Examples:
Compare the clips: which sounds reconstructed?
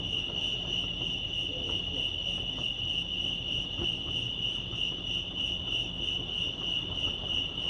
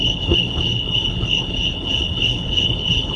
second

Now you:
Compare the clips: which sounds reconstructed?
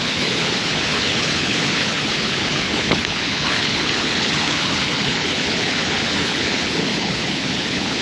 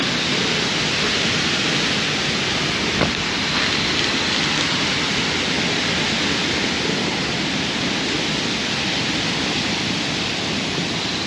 first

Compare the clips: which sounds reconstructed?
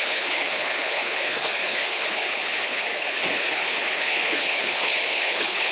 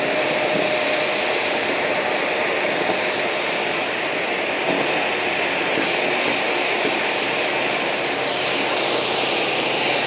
first